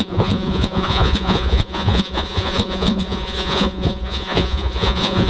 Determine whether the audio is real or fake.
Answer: fake